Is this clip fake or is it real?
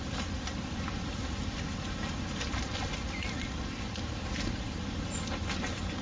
real